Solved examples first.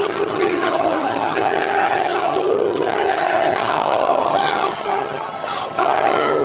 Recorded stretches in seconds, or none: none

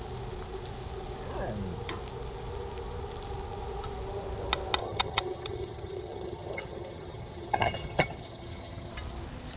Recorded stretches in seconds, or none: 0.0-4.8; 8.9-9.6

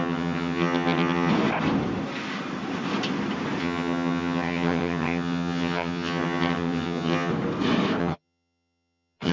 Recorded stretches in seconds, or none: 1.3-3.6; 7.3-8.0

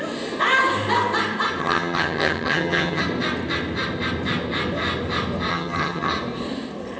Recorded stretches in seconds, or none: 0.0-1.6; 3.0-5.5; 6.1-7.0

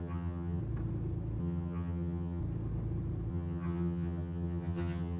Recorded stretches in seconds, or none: 0.6-1.4; 2.4-3.3

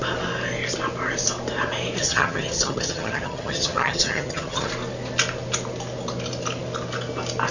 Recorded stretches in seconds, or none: 0.0-2.0; 4.7-7.5

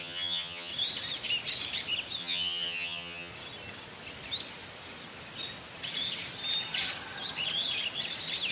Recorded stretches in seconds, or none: 0.7-2.2; 3.3-8.5

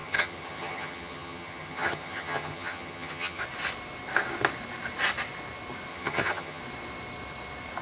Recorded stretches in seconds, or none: 3.4-5.9; 6.6-7.8